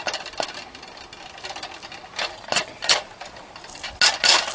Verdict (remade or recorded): recorded